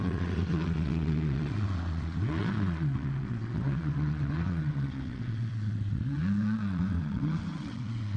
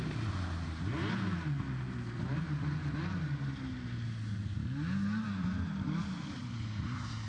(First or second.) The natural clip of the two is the second